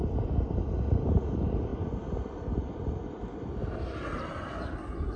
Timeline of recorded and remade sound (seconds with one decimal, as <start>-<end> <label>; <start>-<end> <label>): 0.0-5.2 recorded

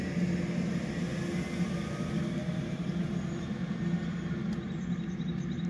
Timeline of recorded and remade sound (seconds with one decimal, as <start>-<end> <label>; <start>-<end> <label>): 0.0-2.4 recorded; 2.4-3.0 remade; 3.0-5.7 recorded

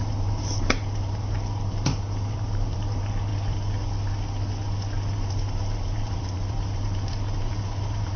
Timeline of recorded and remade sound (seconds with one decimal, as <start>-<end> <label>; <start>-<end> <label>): 0.0-3.3 remade; 3.3-5.1 recorded; 5.1-8.2 remade

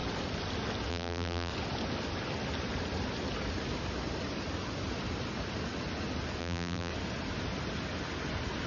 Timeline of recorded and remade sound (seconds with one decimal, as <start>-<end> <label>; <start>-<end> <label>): 0.0-0.9 recorded; 0.9-1.5 remade; 1.5-6.4 recorded; 6.4-6.9 remade; 6.9-8.7 recorded

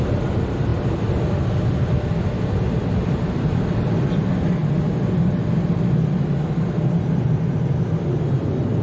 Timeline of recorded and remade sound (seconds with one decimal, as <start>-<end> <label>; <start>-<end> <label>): 0.0-8.8 recorded